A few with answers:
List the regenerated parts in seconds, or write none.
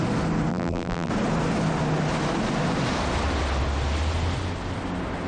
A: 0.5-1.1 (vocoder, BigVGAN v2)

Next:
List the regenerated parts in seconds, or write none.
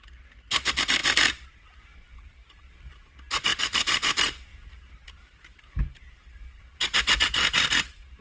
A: 1.0-2.7 (vocoder, BigVGAN v2); 4.5-6.6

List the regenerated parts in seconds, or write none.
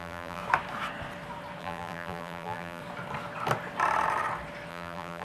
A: 0.0-0.4 (vocoder, BigVGAN v2); 1.6-2.8; 4.7-5.2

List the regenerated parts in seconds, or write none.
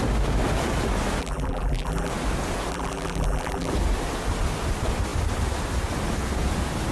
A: 1.2-2.1 (vocoder, BigVGAN v2); 2.7-3.7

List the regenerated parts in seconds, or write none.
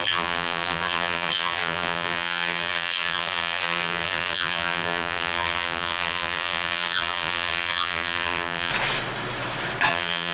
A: 0.0-8.7 (vocoder, BigVGAN v2); 9.9-10.3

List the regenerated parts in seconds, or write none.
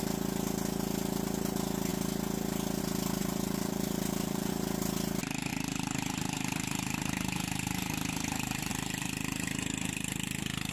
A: 3.2-4.5 (vocoder, BigVGAN v2); 5.5-8.7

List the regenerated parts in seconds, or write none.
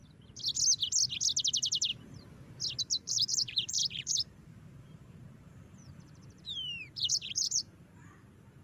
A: 1.4-1.9 (vocoder, BigVGAN v2); 2.8-8.6